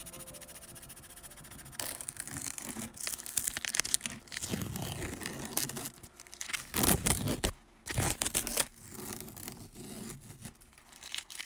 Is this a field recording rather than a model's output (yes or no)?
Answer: yes